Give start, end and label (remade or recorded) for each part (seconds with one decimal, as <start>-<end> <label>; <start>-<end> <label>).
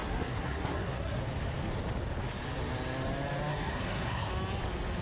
0.0-1.2 remade; 1.2-3.5 recorded; 3.5-4.3 remade; 4.3-5.0 recorded